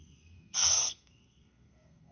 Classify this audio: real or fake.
fake